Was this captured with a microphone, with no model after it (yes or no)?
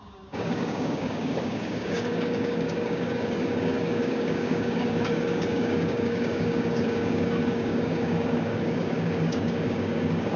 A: no